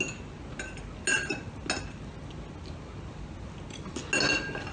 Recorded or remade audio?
recorded